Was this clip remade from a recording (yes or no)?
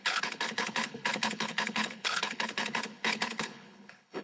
yes